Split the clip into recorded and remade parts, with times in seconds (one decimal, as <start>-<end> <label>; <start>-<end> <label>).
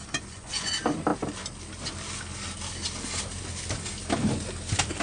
0.0-0.7 remade; 0.7-5.0 recorded